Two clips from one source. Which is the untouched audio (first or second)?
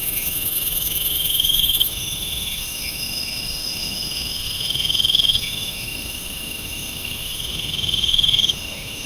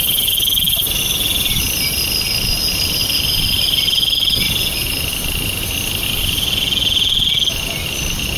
second